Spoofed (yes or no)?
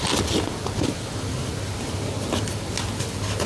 no